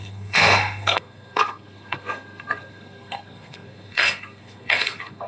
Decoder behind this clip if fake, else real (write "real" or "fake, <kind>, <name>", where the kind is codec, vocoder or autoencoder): fake, codec, SNAC